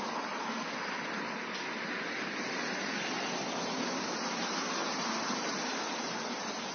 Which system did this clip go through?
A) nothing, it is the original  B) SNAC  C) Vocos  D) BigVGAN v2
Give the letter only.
A